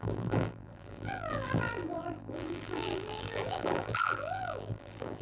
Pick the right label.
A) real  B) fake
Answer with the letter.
B